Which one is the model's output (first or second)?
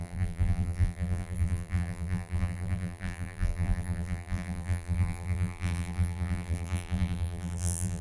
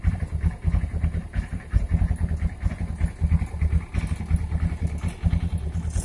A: first